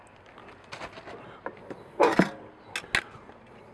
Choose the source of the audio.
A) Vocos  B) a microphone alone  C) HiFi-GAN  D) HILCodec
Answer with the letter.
B